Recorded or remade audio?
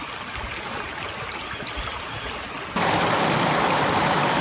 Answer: recorded